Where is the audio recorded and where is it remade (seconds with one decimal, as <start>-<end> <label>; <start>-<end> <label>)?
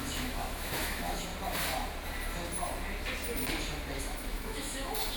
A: 0.0-1.3 remade; 1.3-4.0 recorded; 4.0-5.2 remade